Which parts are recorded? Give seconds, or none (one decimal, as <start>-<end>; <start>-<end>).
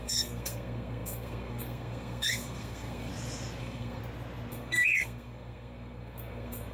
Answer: 3.1-3.6; 4.0-4.5